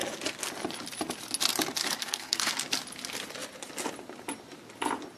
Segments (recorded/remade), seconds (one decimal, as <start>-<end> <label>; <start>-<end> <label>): 0.0-2.0 recorded; 2.0-2.5 remade; 2.5-5.2 recorded